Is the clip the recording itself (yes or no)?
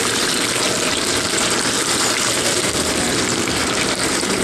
no